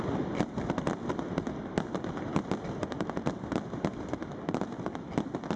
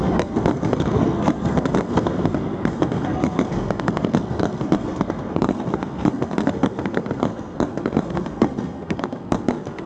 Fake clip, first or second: second